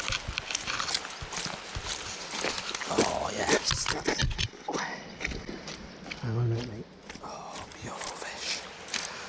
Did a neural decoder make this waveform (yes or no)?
no